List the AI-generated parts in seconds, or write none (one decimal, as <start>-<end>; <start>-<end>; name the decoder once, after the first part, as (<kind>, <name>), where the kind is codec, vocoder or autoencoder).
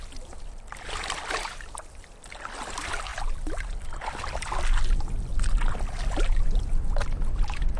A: none